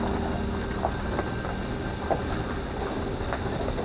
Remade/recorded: recorded